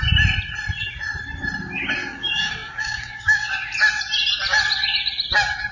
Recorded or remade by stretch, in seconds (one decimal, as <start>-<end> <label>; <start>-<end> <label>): 0.0-2.0 recorded; 2.0-3.5 remade; 3.5-5.7 recorded